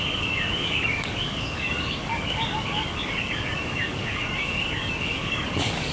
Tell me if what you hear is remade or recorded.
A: remade